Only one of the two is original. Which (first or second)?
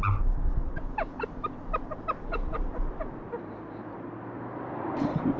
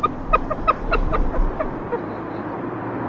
first